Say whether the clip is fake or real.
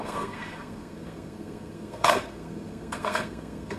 fake